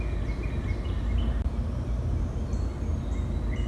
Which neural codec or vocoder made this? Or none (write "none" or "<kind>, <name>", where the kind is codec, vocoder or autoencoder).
none